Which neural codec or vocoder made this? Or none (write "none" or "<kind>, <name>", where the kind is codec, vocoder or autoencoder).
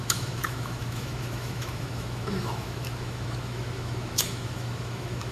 autoencoder, DAC-VAE